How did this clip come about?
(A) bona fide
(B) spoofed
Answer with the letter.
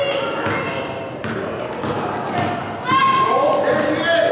A